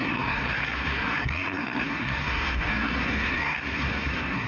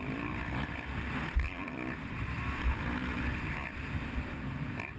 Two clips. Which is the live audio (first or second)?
second